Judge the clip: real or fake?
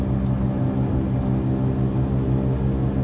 real